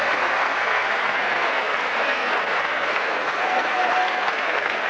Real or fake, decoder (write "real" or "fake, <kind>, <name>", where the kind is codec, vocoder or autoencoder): fake, codec, SNAC